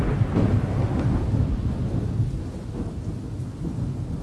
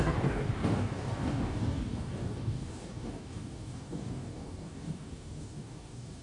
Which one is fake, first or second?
second